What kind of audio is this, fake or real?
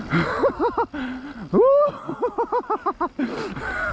real